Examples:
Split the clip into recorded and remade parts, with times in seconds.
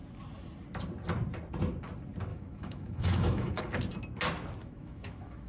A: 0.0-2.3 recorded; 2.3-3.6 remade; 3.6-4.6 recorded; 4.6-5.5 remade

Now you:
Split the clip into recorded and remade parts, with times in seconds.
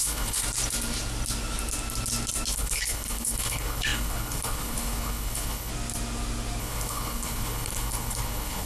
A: 0.0-0.4 remade; 0.4-2.5 recorded; 2.5-5.7 remade; 5.7-6.6 recorded; 6.6-8.7 remade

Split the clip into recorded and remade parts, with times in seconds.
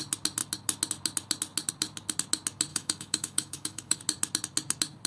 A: 0.0-2.7 recorded; 2.7-4.0 remade; 4.0-5.1 recorded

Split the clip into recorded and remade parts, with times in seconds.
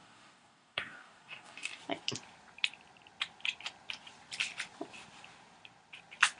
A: 0.0-1.8 remade; 1.8-6.4 recorded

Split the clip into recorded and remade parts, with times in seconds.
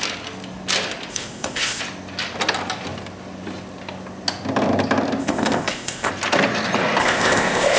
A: 0.0-1.1 recorded; 1.1-1.8 remade; 1.8-5.2 recorded; 5.2-6.1 remade; 6.1-7.0 recorded; 7.0-7.8 remade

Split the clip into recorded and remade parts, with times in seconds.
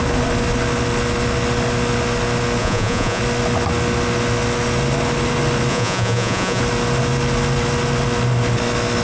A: 0.0-2.6 recorded; 2.6-3.2 remade; 3.2-5.7 recorded; 5.7-6.6 remade; 6.6-9.0 recorded